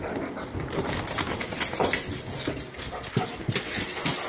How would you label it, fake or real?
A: real